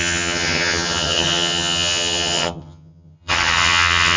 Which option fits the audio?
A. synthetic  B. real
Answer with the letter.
A